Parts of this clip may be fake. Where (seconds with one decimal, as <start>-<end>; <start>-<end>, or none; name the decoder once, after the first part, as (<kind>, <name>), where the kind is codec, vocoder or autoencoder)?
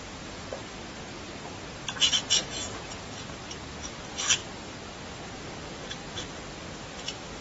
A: none